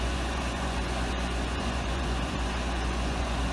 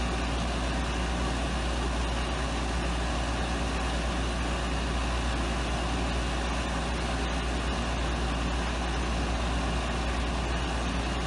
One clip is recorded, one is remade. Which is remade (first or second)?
first